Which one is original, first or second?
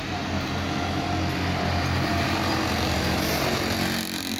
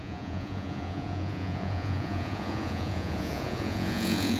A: first